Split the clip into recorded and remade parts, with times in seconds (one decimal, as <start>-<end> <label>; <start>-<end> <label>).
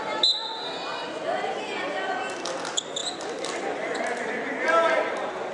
0.0-3.0 recorded; 3.0-4.3 remade; 4.3-5.5 recorded